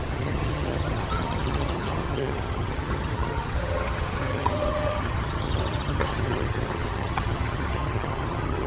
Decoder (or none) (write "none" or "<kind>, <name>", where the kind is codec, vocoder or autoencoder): vocoder, HiFi-GAN